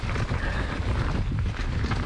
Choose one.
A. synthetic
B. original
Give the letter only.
B